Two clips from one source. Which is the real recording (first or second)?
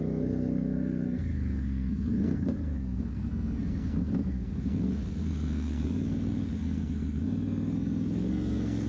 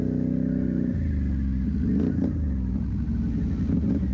second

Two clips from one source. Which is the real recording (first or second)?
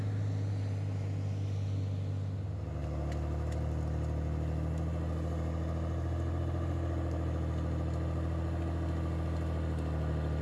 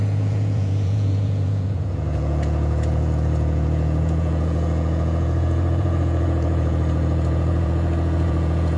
first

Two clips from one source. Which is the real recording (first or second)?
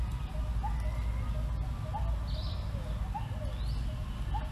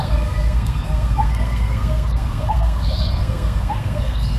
first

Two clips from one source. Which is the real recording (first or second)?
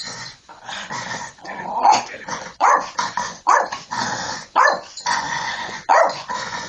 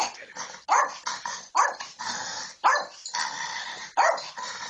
second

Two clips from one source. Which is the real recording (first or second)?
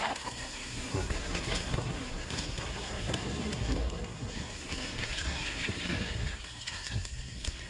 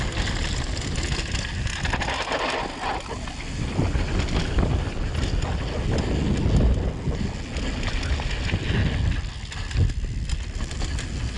second